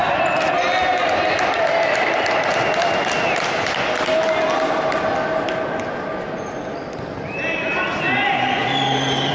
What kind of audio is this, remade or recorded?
recorded